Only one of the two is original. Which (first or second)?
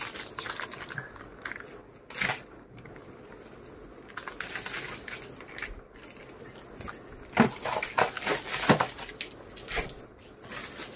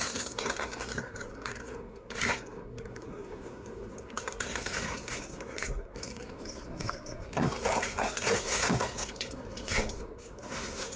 first